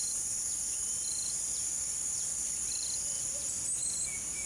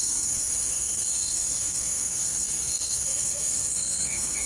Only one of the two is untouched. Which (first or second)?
first